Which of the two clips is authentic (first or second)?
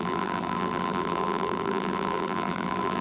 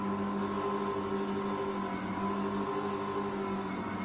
second